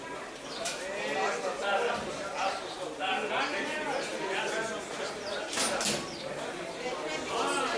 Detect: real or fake real